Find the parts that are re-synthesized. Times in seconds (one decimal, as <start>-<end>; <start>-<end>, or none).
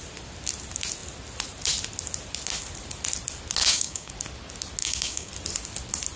3.6-4.1; 4.8-5.3